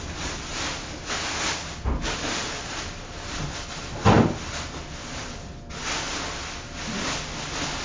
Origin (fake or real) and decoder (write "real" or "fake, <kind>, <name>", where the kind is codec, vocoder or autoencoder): real